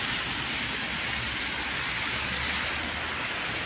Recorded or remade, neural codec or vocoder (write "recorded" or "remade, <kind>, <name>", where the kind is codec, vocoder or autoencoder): recorded